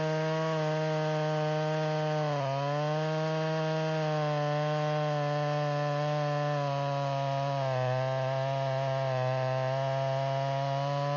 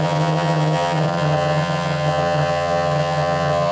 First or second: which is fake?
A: second